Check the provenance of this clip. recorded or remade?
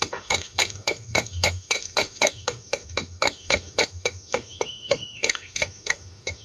remade